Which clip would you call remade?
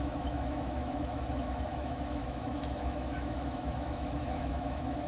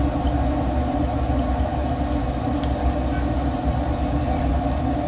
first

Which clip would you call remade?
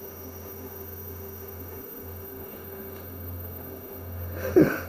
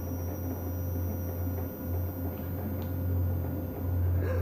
first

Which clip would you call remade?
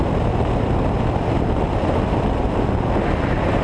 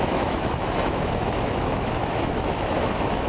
second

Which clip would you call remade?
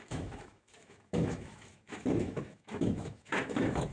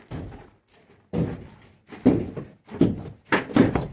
first